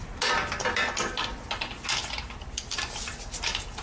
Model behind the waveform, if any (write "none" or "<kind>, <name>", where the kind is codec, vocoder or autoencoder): none